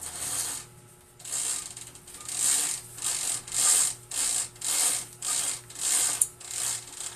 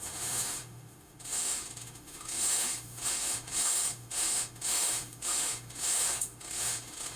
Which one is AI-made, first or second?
second